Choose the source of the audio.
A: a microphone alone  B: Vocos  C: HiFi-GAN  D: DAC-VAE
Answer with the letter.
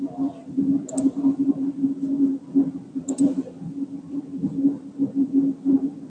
A